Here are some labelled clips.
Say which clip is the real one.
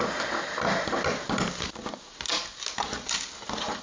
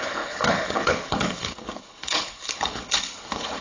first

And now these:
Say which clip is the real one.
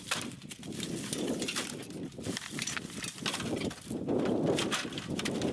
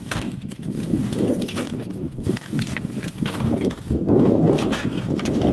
first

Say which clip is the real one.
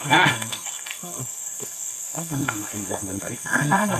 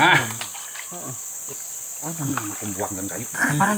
second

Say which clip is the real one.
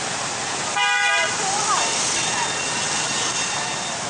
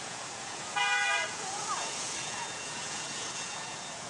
first